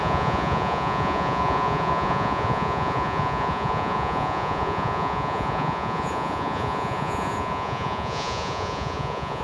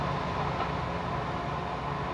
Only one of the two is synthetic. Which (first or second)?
first